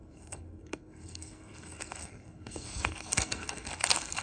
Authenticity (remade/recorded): remade